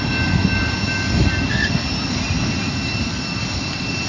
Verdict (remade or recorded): recorded